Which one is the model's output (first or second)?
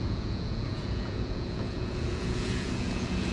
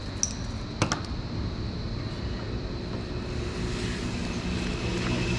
first